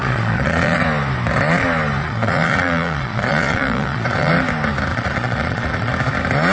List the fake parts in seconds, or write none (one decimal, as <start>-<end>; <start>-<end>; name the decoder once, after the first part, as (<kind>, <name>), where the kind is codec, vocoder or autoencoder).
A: 0.0-0.8 (vocoder, Vocos); 2.0-4.3; 4.9-5.9

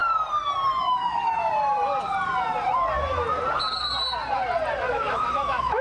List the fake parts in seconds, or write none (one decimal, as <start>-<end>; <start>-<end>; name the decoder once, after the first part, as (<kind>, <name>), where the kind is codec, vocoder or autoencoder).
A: 0.8-1.4 (autoencoder, DAC-VAE); 4.9-5.8

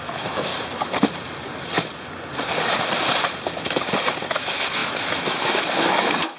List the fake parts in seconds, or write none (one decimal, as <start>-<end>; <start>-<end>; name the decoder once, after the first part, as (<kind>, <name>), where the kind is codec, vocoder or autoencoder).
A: 0.0-0.5 (autoencoder, DAC-VAE); 4.3-6.4

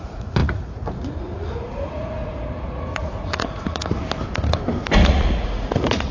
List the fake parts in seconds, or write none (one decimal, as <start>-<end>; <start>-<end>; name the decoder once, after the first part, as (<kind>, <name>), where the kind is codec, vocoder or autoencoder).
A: 0.0-4.0 (vocoder, Vocos); 5.0-6.1

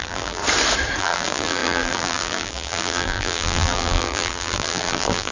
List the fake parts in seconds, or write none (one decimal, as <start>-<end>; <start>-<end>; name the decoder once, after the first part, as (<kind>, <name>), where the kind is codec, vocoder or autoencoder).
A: 0.0-0.4 (vocoder, BigVGAN v2); 1.0-5.3